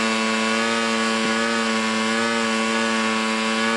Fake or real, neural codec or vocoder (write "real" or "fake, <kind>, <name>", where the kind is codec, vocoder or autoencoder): real